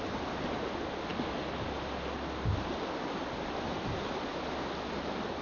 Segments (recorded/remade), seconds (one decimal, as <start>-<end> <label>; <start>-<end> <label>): 0.0-5.4 recorded